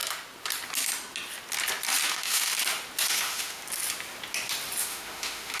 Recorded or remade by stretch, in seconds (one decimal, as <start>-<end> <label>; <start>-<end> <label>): 0.0-2.1 recorded; 2.1-2.5 remade; 2.5-3.1 recorded; 3.1-3.6 remade; 3.6-4.8 recorded; 4.8-5.6 remade